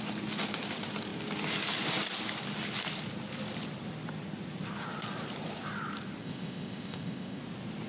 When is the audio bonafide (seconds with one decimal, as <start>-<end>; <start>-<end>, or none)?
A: 0.0-6.2; 7.4-7.9